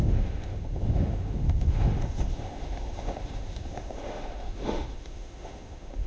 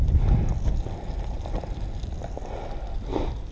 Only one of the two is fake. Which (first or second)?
first